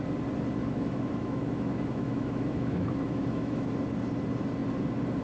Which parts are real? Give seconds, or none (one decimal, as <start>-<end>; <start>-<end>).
0.0-0.6; 3.7-5.2